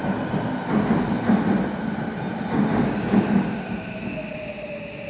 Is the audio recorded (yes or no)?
yes